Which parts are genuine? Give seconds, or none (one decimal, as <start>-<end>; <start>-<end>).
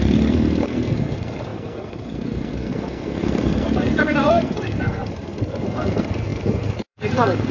none